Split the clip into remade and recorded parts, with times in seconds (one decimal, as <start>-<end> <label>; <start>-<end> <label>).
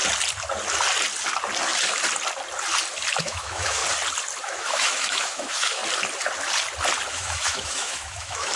0.0-3.2 recorded; 3.2-3.8 remade; 3.8-4.4 recorded; 4.4-5.8 remade; 5.8-7.1 recorded; 7.1-8.6 remade